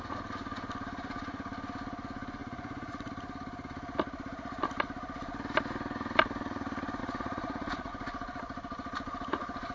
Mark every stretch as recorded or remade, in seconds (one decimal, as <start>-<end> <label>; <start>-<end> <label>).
0.0-2.4 recorded; 2.4-3.1 remade; 3.1-7.0 recorded; 7.0-7.9 remade; 7.9-9.7 recorded